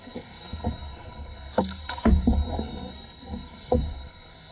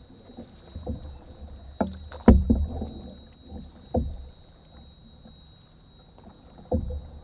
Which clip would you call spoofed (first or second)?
first